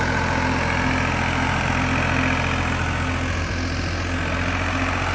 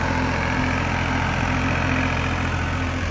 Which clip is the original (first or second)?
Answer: first